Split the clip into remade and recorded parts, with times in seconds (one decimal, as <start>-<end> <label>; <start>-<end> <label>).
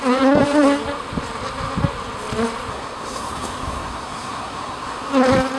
0.0-2.7 recorded; 2.7-5.1 remade; 5.1-5.6 recorded